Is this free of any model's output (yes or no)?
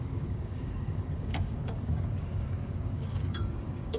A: no